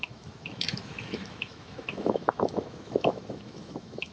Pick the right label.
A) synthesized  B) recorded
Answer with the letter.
A